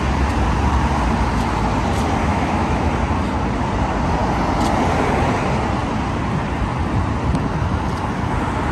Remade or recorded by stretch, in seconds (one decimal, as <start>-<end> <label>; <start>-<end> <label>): 0.0-2.3 recorded; 2.3-2.9 remade; 2.9-8.7 recorded